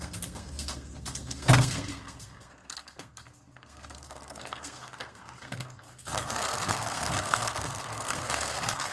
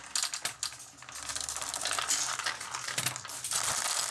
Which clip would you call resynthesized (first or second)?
first